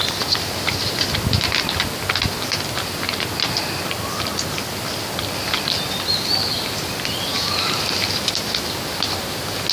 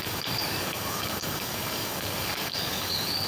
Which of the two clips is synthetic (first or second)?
second